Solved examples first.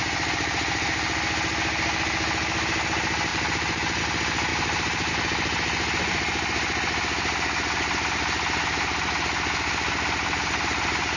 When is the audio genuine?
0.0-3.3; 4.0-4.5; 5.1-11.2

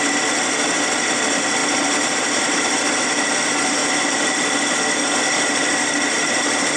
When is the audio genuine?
0.0-6.8

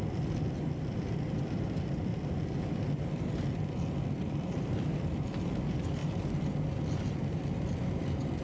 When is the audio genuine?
2.1-4.2; 6.0-7.7

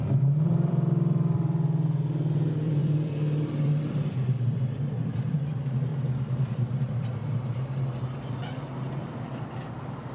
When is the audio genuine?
5.9-6.5; 7.2-9.1

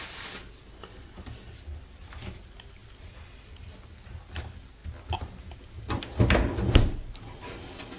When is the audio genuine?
0.0-8.0

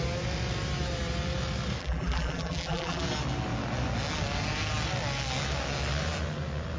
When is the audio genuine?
0.0-1.8; 3.0-6.8